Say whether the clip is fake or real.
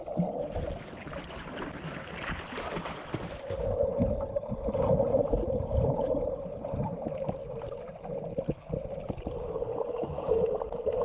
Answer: fake